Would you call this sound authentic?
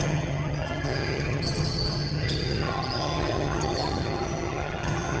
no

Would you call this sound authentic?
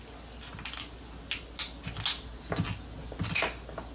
yes